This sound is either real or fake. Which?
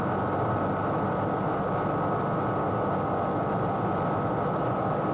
real